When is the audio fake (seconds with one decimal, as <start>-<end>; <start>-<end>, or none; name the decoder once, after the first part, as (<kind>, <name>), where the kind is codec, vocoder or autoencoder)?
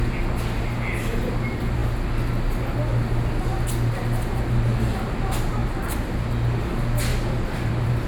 7.1-8.1 (vocoder, BigVGAN v2)